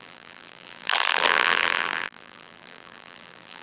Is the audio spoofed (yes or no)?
yes